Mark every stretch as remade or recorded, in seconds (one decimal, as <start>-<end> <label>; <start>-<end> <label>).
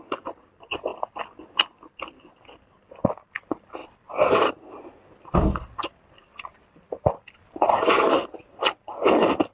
0.0-3.8 recorded; 3.8-4.5 remade; 4.5-5.6 recorded; 5.6-8.9 remade; 8.9-9.5 recorded